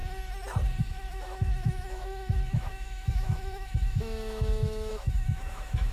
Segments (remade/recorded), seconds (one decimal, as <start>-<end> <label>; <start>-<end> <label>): 0.0-0.8 recorded; 0.8-5.9 remade